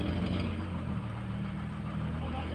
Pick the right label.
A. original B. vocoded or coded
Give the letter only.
B